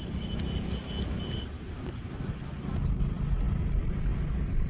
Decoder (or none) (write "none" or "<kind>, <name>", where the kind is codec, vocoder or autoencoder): none